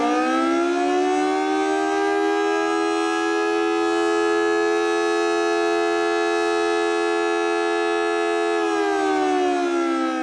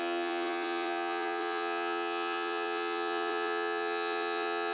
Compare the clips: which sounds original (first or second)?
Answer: first